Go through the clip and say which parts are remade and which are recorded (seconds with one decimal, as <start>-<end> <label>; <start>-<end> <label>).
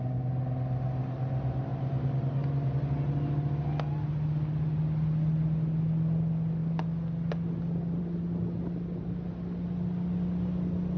0.0-11.0 recorded